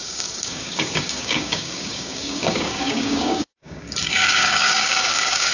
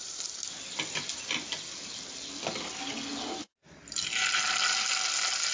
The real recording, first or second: second